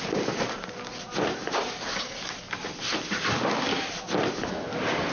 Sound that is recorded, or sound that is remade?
recorded